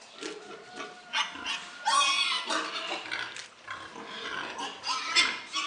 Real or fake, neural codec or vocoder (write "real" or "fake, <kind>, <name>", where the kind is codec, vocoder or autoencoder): real